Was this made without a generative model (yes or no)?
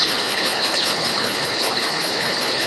no